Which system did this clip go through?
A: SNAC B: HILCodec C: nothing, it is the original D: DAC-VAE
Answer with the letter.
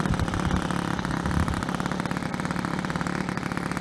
C